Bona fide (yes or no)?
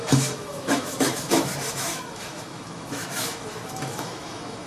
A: no